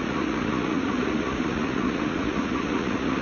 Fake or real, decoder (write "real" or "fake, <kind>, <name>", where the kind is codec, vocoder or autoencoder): fake, vocoder, Vocos